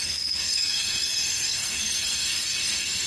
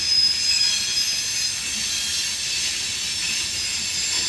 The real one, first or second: second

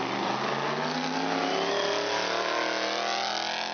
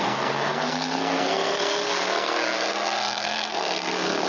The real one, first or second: first